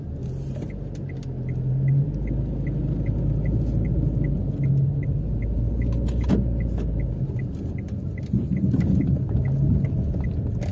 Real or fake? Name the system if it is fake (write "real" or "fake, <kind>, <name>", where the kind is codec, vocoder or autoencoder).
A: real